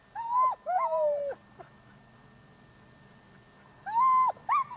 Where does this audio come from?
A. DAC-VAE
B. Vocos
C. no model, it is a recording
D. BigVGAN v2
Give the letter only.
C